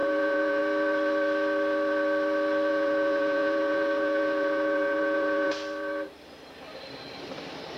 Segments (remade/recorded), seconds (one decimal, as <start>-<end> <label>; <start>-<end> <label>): 0.0-0.6 remade; 0.6-2.7 recorded; 2.7-5.5 remade; 5.5-7.8 recorded